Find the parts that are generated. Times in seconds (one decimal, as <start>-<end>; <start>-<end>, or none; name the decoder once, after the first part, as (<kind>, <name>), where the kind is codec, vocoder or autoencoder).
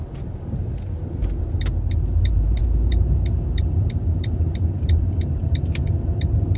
1.9-6.6 (vocoder, BigVGAN v2)